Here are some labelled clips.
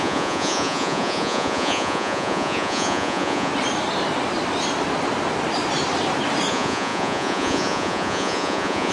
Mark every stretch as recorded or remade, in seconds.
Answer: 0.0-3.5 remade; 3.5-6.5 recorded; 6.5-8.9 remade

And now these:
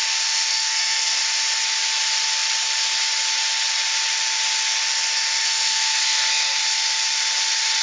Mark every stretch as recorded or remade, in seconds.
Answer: 0.0-0.5 recorded; 0.5-1.2 remade; 1.2-5.4 recorded; 5.4-6.6 remade; 6.6-7.8 recorded

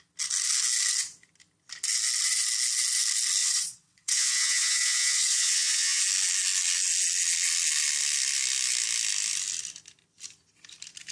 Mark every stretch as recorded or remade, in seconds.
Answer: 0.0-3.4 recorded; 3.4-6.0 remade; 6.0-11.1 recorded

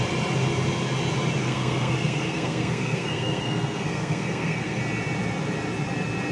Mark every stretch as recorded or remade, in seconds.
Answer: 0.0-1.4 recorded; 1.4-4.8 remade; 4.8-6.3 recorded

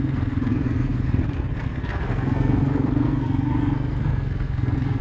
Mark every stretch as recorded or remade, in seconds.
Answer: 0.0-5.0 remade